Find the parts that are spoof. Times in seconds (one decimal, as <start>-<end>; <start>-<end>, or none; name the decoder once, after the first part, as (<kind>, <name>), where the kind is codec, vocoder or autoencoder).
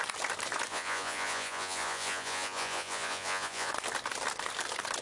0.7-3.7 (vocoder, Vocos)